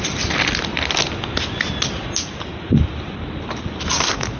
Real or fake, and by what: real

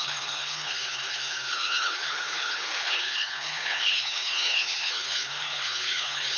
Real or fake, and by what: fake, codec, HILCodec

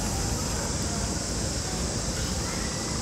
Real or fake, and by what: real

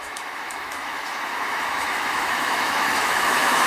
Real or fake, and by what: fake, autoencoder, DAC-VAE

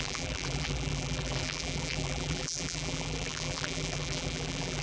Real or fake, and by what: fake, vocoder, BigVGAN v2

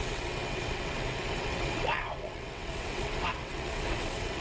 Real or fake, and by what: fake, vocoder, WaveNeXt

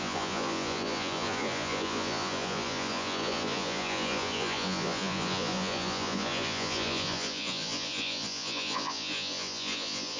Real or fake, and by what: fake, vocoder, Vocos